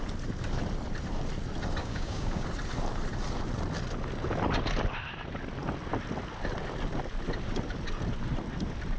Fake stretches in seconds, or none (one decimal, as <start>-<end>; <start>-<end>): 1.8-2.5